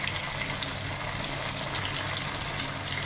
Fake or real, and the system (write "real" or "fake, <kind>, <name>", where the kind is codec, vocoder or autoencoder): real